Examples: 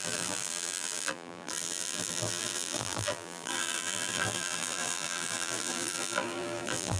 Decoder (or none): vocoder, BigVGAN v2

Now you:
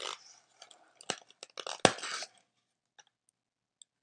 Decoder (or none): none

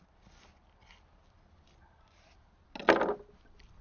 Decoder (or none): none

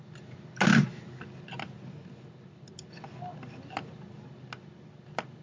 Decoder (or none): none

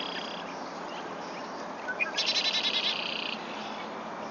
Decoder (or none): none